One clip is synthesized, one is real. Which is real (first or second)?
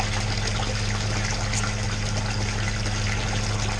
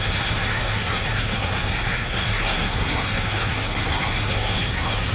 first